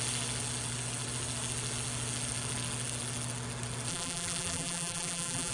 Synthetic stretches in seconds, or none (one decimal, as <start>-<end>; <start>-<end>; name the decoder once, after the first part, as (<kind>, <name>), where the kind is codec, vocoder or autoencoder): 3.9-5.5 (vocoder, BigVGAN v2)